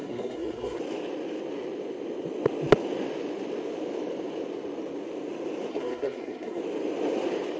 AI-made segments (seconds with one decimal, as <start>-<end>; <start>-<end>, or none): 0.0-0.8; 5.7-6.6

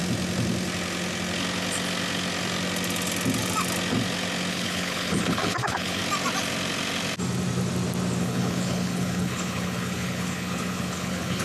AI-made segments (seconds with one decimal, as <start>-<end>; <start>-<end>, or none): 4.5-6.0; 8.2-11.4

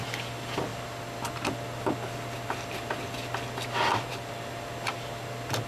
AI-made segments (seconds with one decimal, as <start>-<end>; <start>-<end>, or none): none

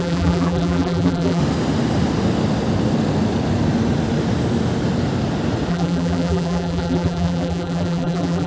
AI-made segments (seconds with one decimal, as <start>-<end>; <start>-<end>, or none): 0.0-1.4; 5.7-8.5

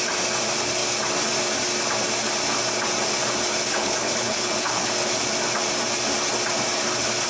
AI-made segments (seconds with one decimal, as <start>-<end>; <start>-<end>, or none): 3.7-4.9

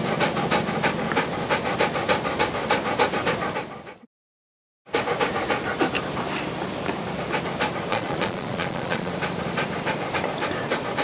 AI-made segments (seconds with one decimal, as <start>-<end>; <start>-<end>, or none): 7.9-9.1